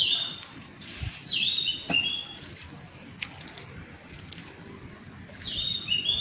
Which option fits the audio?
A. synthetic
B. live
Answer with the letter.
B